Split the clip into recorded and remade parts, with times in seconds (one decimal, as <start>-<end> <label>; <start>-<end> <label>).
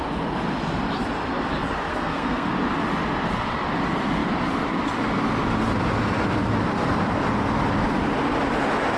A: 0.0-1.9 recorded; 1.9-2.5 remade; 2.5-9.0 recorded